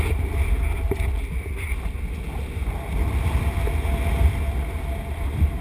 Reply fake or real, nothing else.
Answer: real